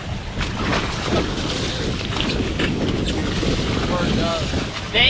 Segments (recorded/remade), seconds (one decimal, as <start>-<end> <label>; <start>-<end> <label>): 0.0-5.1 recorded